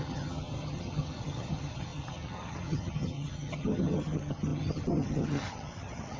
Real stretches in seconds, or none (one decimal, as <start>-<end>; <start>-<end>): none